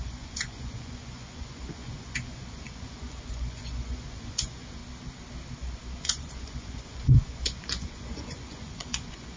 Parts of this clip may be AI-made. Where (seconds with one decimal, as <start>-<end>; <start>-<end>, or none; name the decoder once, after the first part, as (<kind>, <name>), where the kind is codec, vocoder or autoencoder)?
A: 0.0-4.8 (vocoder, Vocos); 6.0-9.4